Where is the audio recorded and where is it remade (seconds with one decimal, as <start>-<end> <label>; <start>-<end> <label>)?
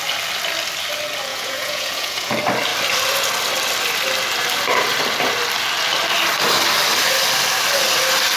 0.0-1.3 recorded; 1.3-2.3 remade; 2.3-8.4 recorded